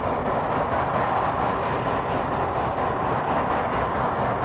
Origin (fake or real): real